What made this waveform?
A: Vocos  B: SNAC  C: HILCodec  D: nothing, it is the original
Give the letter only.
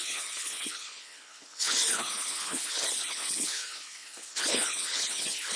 C